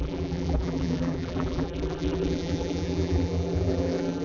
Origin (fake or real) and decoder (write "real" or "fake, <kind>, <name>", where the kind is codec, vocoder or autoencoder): fake, vocoder, BigVGAN v2